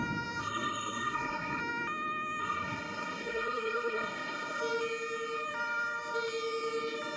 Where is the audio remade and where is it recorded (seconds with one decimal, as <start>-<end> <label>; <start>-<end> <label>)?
0.0-0.4 recorded; 0.4-1.6 remade; 1.6-2.4 recorded; 2.4-4.6 remade; 4.6-7.2 recorded